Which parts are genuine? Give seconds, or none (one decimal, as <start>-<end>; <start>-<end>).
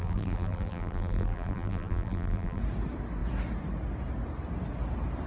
2.6-5.3